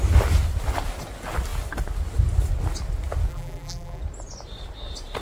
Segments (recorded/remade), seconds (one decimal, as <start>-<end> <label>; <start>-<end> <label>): 0.0-3.3 recorded; 3.3-4.0 remade; 4.0-5.2 recorded